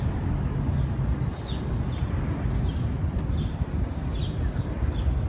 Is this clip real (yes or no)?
yes